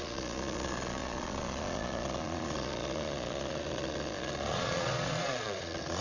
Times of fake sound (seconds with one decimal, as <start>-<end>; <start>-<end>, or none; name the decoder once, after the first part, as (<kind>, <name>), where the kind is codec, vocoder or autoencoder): 0.0-6.0 (vocoder, Vocos)